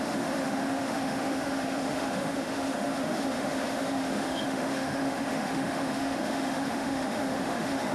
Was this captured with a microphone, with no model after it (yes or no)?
no